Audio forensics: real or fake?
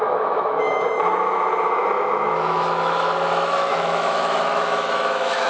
fake